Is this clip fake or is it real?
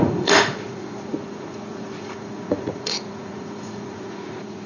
fake